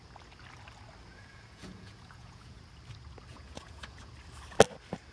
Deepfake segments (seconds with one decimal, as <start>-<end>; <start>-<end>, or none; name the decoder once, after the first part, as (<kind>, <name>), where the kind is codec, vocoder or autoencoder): 1.1-2.6 (vocoder, Vocos); 3.3-4.1